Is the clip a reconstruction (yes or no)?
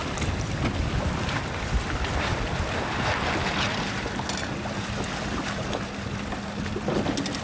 no